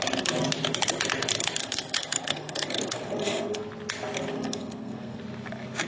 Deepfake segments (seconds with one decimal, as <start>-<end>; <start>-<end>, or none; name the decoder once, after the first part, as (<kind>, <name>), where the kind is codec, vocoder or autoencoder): 1.6-3.6 (codec, SNAC); 4.3-5.2